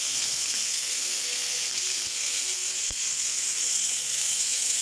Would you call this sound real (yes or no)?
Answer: no